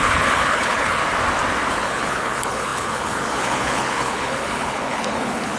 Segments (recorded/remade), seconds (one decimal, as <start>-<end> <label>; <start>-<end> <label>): 0.0-1.0 remade; 1.0-1.7 recorded; 1.7-5.6 remade